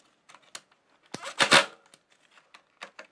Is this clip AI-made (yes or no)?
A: no